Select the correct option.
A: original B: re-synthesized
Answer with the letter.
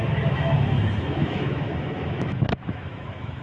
B